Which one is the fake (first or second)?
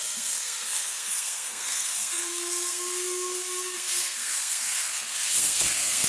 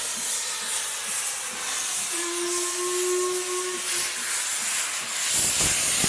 first